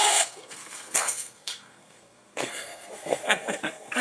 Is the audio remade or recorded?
remade